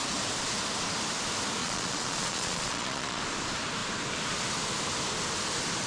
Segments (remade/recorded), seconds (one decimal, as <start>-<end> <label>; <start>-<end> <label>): 0.0-1.6 recorded; 1.6-3.2 remade; 3.2-5.9 recorded